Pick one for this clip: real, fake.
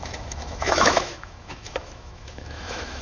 fake